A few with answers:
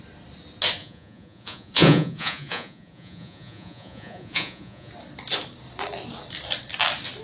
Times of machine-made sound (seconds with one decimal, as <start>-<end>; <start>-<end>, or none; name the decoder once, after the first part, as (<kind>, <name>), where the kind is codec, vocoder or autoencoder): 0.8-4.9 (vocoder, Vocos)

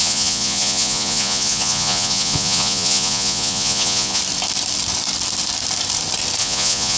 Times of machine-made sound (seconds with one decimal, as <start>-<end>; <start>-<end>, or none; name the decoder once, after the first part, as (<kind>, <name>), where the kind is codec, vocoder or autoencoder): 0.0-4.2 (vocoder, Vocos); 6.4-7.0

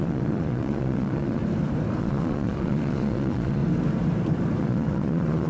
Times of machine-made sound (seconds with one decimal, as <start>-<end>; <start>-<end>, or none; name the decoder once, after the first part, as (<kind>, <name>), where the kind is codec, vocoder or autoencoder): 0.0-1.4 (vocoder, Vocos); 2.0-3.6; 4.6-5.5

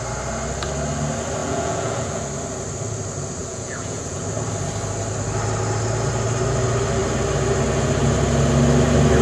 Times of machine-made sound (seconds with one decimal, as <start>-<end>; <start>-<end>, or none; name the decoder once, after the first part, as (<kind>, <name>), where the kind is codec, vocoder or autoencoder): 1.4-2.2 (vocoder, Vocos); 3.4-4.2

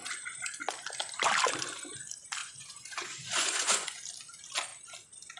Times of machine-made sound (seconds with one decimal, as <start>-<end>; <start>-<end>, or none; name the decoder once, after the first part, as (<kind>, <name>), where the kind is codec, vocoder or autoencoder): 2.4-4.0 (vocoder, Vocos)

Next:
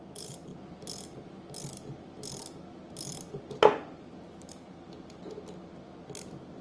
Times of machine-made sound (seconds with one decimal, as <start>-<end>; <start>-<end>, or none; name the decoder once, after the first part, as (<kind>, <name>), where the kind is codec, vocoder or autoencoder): none

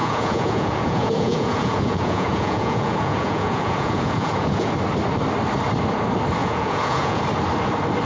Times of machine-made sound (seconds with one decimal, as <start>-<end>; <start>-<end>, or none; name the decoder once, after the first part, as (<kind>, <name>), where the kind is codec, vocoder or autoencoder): 0.0-4.7 (vocoder, Vocos); 6.4-7.2